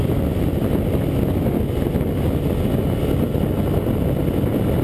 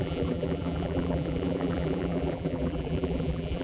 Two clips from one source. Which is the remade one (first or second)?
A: second